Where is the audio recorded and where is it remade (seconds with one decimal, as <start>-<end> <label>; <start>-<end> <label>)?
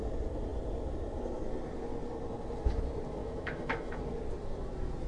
0.0-3.2 recorded; 3.2-4.0 remade; 4.0-5.1 recorded